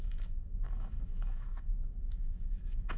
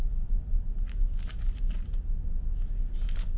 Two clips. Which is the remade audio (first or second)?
first